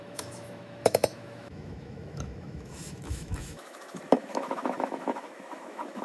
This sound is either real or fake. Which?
fake